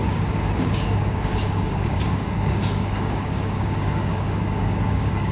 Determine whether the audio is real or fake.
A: fake